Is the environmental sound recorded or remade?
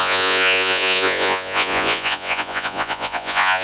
remade